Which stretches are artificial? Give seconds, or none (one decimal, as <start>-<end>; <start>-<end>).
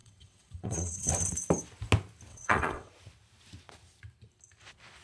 0.0-1.1; 2.3-2.9